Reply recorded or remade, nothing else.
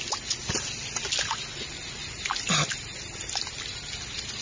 recorded